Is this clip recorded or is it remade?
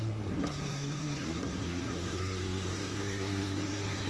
remade